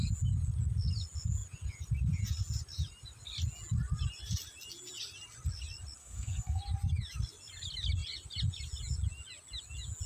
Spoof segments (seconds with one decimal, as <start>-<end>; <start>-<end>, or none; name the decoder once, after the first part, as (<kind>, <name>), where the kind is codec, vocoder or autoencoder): 6.0-6.6 (codec, SNAC)